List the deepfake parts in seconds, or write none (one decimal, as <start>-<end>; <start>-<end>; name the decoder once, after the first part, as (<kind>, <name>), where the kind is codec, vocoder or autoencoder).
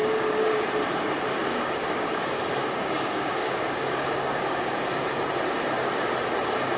0.0-0.6 (codec, DAC); 1.4-4.9